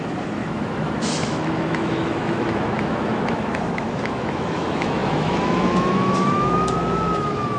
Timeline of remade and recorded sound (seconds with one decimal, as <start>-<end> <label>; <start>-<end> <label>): 0.0-7.6 remade